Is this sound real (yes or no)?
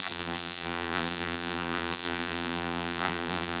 no